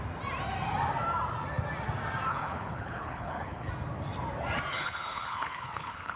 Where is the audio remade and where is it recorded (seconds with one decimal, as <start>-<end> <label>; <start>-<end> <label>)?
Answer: 0.0-2.3 recorded; 2.3-3.7 remade; 3.7-4.7 recorded; 4.7-6.2 remade